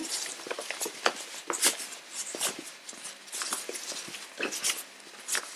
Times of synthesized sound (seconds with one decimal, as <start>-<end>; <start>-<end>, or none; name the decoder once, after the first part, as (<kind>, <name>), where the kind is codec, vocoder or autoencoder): 0.0-1.0 (vocoder, BigVGAN v2)